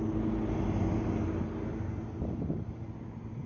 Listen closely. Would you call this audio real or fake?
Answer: real